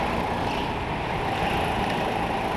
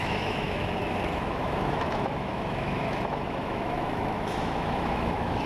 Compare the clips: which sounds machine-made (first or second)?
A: second